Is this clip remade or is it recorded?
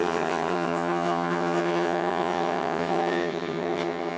remade